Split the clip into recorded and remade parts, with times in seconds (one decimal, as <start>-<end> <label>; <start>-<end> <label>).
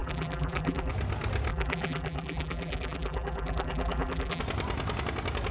0.0-0.9 remade; 0.9-1.5 recorded; 1.5-4.4 remade; 4.4-5.5 recorded